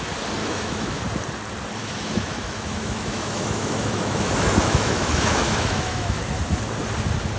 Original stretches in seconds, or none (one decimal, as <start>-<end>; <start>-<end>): 0.0-0.4; 1.0-1.8; 6.2-7.4